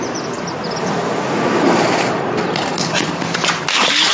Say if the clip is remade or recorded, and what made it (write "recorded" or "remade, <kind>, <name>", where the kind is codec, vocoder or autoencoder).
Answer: recorded